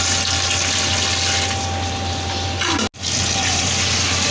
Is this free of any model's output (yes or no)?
yes